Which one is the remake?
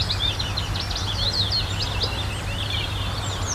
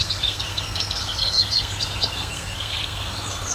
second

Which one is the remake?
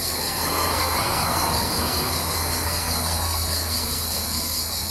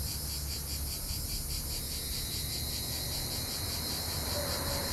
first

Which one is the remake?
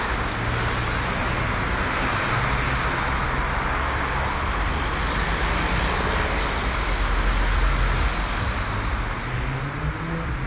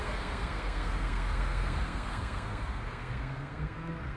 second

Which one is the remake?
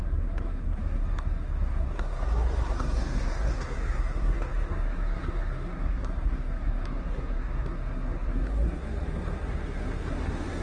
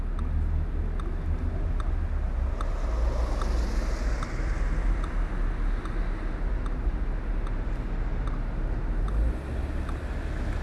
first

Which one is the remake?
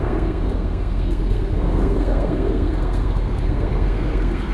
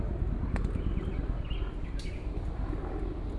first